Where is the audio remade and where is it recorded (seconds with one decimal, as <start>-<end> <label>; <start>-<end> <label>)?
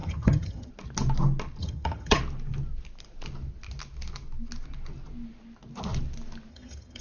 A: 0.0-0.7 remade; 0.7-1.6 recorded; 1.6-2.2 remade; 2.2-6.5 recorded; 6.5-7.0 remade